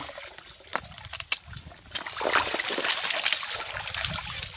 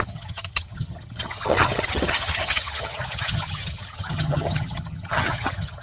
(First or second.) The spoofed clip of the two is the second